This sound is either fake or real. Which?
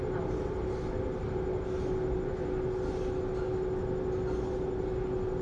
real